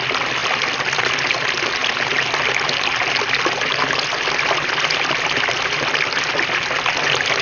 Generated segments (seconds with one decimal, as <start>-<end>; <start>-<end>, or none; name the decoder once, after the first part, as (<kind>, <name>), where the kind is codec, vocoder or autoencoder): none